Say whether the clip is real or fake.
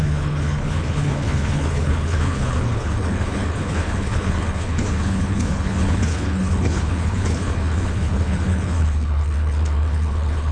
fake